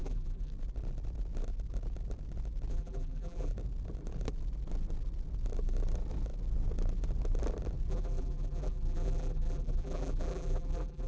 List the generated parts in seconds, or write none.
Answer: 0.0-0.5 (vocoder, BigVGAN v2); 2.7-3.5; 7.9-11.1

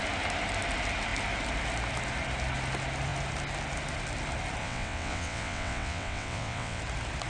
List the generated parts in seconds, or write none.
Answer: 4.6-6.8 (vocoder, WaveNeXt)

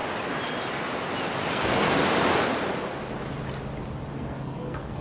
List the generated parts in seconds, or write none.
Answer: 1.5-2.0 (codec, SNAC); 4.1-5.0

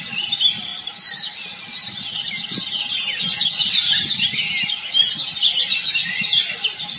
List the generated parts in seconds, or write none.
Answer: 0.7-2.9 (vocoder, BigVGAN v2); 6.0-7.0

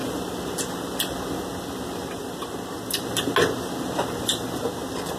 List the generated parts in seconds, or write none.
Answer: 0.0-1.0 (vocoder, BigVGAN v2); 2.2-2.8

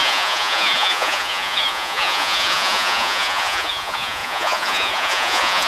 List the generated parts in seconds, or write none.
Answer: 0.0-5.7 (vocoder, Vocos)